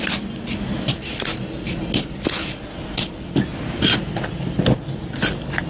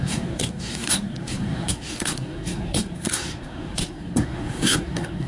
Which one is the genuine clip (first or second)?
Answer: first